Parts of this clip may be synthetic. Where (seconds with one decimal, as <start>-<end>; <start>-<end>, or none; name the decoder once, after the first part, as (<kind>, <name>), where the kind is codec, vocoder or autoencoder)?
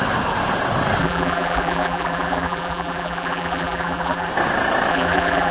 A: 1.0-4.3 (vocoder, BigVGAN v2); 4.9-5.5